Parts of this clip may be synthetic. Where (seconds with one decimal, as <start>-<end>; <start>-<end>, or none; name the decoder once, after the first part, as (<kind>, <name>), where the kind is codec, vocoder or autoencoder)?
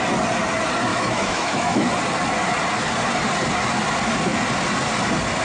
0.9-1.9 (autoencoder, DAC-VAE)